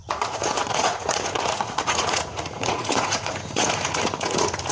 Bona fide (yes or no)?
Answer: no